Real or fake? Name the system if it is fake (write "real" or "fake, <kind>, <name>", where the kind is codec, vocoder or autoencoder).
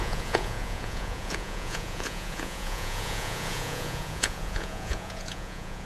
fake, vocoder, Vocos